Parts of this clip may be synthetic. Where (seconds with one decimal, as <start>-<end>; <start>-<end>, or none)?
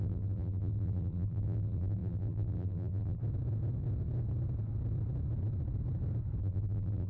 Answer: 0.0-3.2; 6.4-7.1